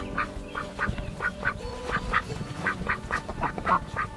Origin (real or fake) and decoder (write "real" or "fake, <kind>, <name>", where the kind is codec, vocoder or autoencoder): fake, vocoder, Vocos